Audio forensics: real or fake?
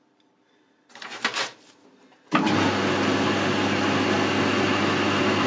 real